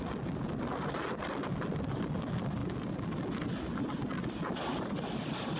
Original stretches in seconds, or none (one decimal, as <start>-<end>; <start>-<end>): 0.0-5.6